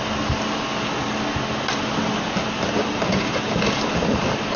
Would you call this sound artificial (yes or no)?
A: no